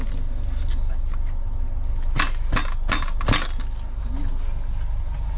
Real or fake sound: real